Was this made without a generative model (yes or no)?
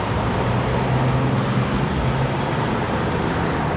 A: yes